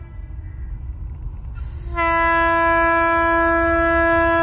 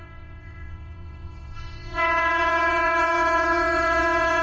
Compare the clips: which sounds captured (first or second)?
first